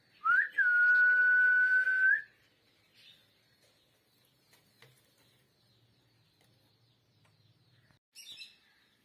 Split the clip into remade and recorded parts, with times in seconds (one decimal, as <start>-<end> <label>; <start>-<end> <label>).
0.0-9.0 recorded